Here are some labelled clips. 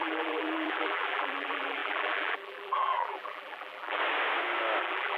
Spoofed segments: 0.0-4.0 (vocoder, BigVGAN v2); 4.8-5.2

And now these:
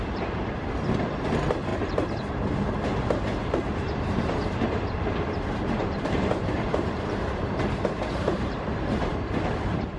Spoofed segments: 1.7-5.1 (vocoder, BigVGAN v2); 5.8-9.3

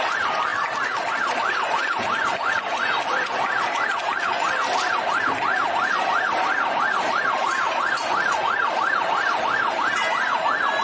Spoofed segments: 0.0-0.5 (vocoder, BigVGAN v2); 1.1-10.8

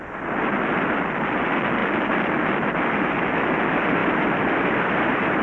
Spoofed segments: 1.8-3.6 (vocoder, BigVGAN v2); 4.0-4.7

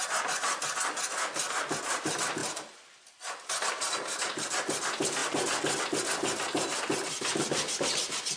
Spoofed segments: none

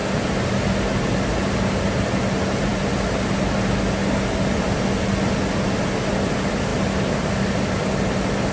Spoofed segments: none

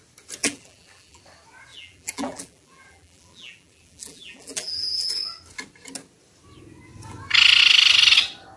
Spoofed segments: 0.4-1.2 (vocoder, BigVGAN v2); 1.7-5.1

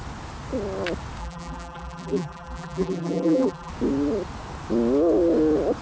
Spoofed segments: 1.2-3.7 (vocoder, BigVGAN v2)